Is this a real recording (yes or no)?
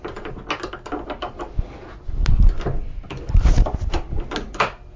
yes